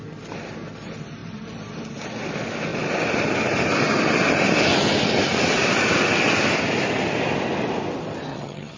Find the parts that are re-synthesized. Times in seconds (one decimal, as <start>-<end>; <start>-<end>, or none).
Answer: 8.3-8.8